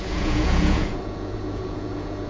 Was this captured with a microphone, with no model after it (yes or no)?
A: no